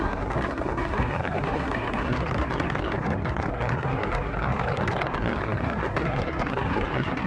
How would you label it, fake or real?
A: fake